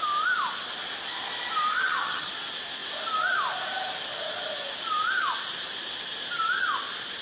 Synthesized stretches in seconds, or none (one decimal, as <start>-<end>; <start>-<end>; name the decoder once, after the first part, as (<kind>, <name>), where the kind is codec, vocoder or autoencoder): 1.7-2.3 (vocoder, HiFi-GAN)